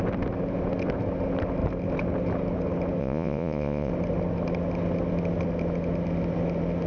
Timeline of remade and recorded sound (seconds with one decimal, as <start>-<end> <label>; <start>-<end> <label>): 0.0-3.0 recorded; 3.0-3.9 remade; 3.9-6.9 recorded